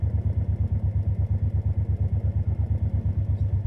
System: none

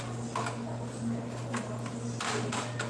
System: none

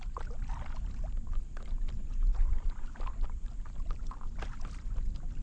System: none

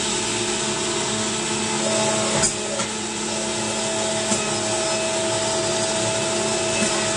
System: none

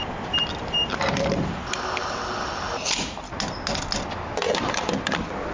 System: none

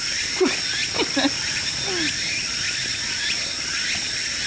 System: none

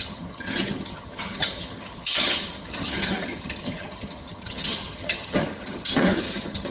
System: vocoder, HiFi-GAN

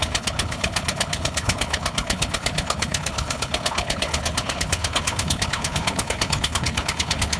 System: codec, HILCodec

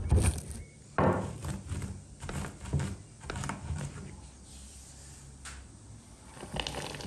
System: none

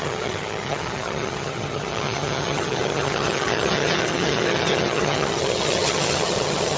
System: vocoder, HiFi-GAN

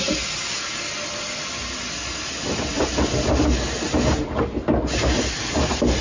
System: none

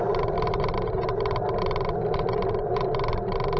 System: none